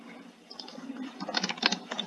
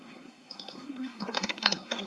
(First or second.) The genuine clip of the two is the first